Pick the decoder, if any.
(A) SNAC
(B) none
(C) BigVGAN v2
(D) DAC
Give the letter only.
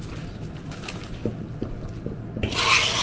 B